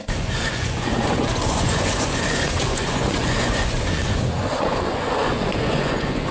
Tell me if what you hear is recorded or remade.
remade